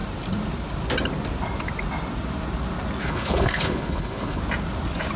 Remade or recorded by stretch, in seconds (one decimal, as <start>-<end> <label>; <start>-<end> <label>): 0.0-3.0 recorded; 3.0-4.4 remade; 4.4-5.2 recorded